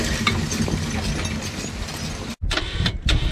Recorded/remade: recorded